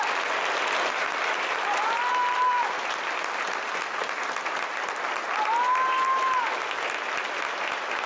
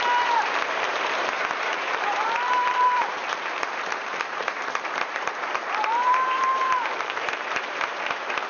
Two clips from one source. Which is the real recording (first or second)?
first